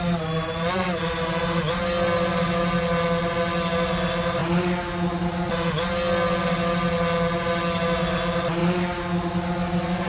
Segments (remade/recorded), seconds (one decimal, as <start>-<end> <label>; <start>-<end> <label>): 0.0-10.1 recorded